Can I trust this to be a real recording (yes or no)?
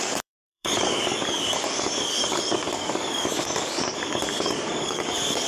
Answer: no